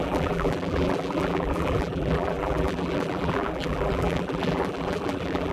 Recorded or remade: remade